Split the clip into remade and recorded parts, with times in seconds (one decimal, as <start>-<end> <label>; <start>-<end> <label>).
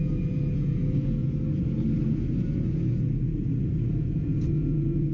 0.0-1.2 remade; 1.2-4.2 recorded; 4.2-5.1 remade